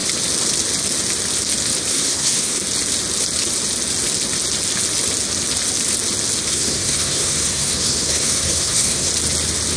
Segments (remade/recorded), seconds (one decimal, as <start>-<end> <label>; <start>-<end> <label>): 0.0-1.9 recorded; 1.9-2.6 remade; 2.6-6.5 recorded; 6.5-9.1 remade; 9.1-9.8 recorded